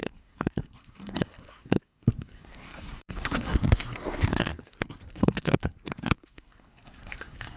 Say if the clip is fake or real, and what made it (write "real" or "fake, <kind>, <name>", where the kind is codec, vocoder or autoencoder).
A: fake, codec, SNAC